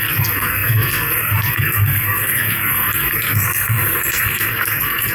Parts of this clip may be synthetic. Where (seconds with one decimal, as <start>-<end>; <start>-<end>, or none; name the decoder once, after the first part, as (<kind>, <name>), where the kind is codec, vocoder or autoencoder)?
0.0-5.1 (codec, SNAC)